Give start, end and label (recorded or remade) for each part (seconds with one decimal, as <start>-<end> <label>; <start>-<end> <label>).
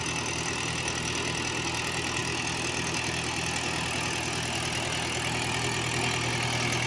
0.0-6.9 recorded